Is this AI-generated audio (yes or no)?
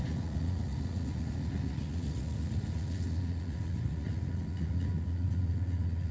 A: yes